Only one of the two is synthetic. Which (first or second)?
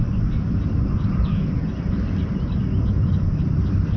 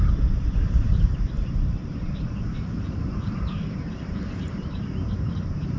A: second